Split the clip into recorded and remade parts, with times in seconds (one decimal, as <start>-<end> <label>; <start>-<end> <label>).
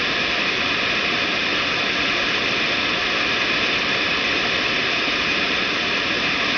0.0-1.5 remade; 1.5-3.6 recorded; 3.6-6.6 remade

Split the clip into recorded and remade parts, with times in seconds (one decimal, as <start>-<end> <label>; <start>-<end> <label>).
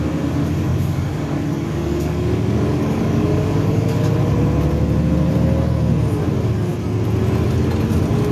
0.0-0.7 recorded; 0.7-4.1 remade; 4.1-8.3 recorded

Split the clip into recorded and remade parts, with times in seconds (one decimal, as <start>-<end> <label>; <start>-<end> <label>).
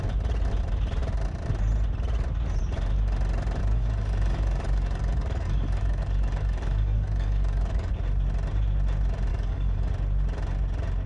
0.0-3.6 recorded; 3.6-7.9 remade; 7.9-9.3 recorded; 9.3-9.9 remade; 9.9-11.1 recorded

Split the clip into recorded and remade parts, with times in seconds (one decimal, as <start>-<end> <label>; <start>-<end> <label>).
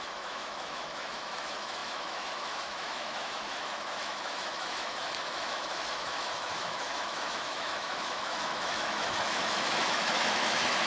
0.0-10.9 remade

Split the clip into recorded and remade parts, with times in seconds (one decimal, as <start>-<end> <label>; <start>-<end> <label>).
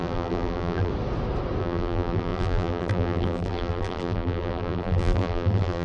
0.0-0.9 remade; 0.9-1.6 recorded; 1.6-5.8 remade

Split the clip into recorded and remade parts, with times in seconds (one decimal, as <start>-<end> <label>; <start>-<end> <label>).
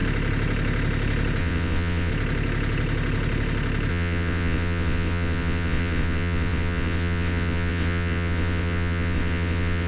0.0-1.4 recorded; 1.4-2.1 remade; 2.1-3.9 recorded; 3.9-9.9 remade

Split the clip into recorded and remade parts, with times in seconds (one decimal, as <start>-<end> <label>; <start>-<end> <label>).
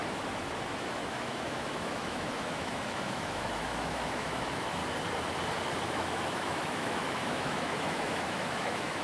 0.0-0.7 recorded; 0.7-4.8 remade; 4.8-5.8 recorded; 5.8-9.0 remade